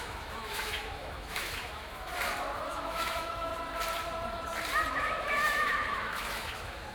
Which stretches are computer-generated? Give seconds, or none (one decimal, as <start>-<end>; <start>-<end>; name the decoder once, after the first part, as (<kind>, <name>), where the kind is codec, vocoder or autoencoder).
0.0-2.1 (autoencoder, DAC-VAE); 2.7-3.5; 4.9-6.9